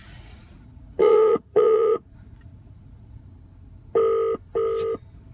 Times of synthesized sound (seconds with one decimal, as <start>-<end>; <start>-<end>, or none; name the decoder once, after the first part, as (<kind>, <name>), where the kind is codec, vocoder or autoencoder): 0.0-3.2 (vocoder, Vocos)